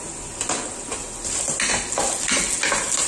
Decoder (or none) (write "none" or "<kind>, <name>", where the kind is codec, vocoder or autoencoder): none